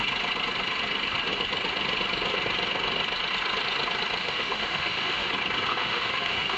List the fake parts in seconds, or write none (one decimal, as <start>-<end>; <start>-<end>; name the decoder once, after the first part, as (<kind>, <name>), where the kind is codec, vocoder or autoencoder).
4.2-5.3 (autoencoder, DAC-VAE); 5.7-6.6